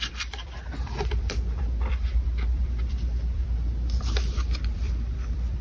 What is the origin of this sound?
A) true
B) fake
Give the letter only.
B